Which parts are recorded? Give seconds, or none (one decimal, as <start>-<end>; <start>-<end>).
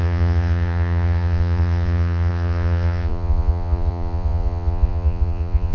none